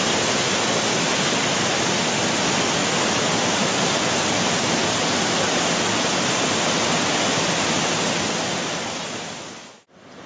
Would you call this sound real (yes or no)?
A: yes